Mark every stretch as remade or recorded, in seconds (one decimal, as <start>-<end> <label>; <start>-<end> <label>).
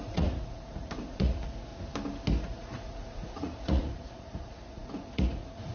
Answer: 0.0-1.7 remade; 1.7-2.4 recorded; 2.4-5.7 remade